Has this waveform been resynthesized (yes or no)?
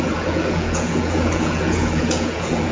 yes